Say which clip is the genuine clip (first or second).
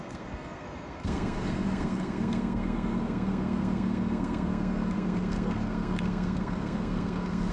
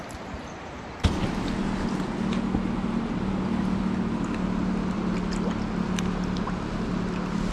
second